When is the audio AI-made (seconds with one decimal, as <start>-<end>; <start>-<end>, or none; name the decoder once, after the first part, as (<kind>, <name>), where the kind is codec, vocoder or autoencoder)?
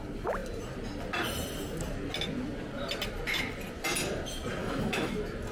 4.6-5.1 (autoencoder, DAC-VAE)